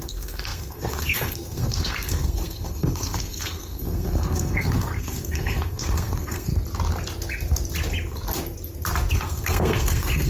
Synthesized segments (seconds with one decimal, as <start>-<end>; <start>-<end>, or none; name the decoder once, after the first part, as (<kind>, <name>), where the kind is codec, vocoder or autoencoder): 0.0-6.5 (codec, SNAC); 9.1-10.3